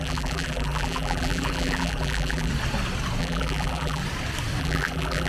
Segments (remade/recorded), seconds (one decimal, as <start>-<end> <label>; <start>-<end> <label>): 0.0-2.5 remade; 2.5-3.2 recorded; 3.2-4.0 remade; 4.0-4.6 recorded; 4.6-5.3 remade